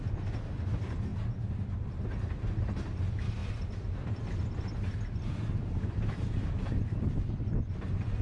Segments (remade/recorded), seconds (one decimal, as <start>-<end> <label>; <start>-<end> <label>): 0.0-8.2 recorded

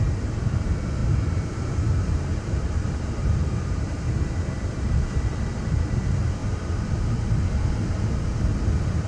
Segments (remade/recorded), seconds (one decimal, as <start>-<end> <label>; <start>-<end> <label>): 0.0-1.0 recorded; 1.0-2.8 remade; 2.8-3.4 recorded; 3.4-4.3 remade; 4.3-6.4 recorded; 6.4-7.7 remade; 7.7-9.1 recorded